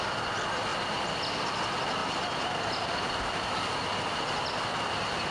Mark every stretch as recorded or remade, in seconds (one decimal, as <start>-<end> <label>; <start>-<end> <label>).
0.0-5.3 recorded